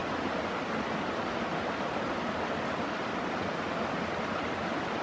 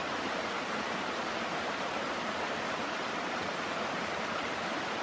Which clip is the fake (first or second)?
second